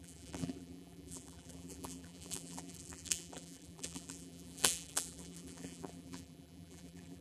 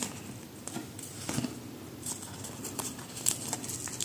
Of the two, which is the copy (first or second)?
first